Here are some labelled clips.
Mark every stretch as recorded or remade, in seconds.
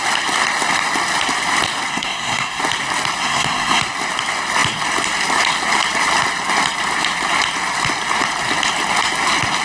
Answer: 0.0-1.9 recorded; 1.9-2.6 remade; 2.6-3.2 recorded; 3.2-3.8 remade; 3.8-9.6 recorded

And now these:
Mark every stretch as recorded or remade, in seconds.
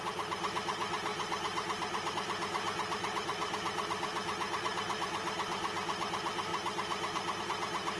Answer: 0.0-4.1 remade; 4.1-4.6 recorded; 4.6-8.0 remade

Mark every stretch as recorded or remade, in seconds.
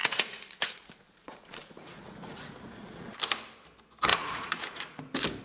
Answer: 0.0-3.2 remade; 3.2-4.1 recorded; 4.1-5.0 remade; 5.0-5.4 recorded